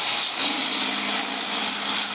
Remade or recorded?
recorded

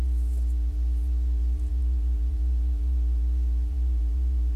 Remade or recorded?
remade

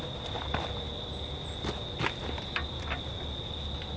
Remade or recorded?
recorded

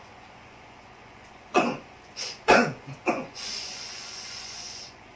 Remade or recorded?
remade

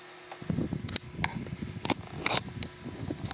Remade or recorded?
recorded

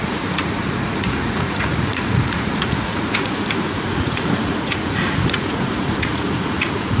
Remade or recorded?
remade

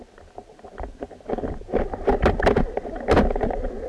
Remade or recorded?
recorded